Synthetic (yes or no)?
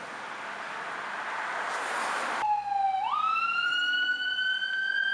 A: no